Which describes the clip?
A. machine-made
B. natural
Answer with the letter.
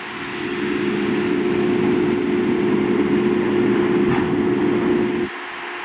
B